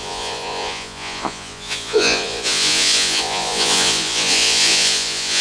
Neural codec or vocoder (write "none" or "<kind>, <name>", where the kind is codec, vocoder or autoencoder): vocoder, Vocos